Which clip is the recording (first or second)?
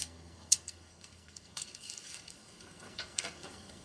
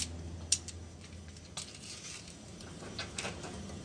second